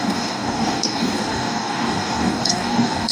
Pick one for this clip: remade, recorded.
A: remade